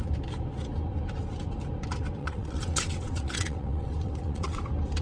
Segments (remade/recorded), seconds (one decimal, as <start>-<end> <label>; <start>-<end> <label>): 0.0-2.2 recorded; 2.2-4.6 remade; 4.6-5.0 recorded